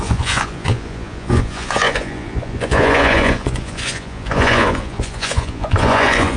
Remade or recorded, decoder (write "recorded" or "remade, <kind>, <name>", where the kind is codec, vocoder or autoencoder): remade, vocoder, Vocos